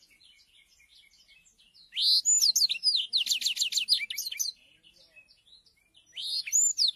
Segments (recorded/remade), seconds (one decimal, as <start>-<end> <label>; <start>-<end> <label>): 0.0-7.0 recorded